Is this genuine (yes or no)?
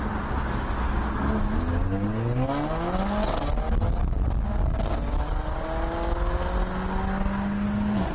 yes